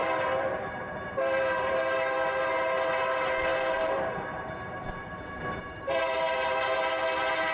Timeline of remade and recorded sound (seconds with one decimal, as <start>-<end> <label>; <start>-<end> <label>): 0.0-7.5 remade